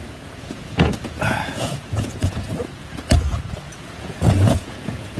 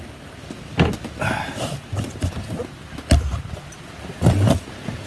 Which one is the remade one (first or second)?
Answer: first